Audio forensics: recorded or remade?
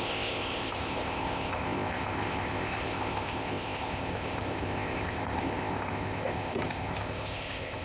remade